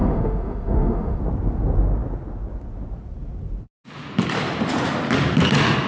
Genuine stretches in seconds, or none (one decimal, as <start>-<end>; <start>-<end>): 1.2-5.9